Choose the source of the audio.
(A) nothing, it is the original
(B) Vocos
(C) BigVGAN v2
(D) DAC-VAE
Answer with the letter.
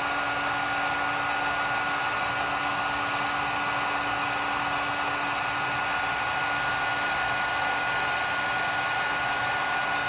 A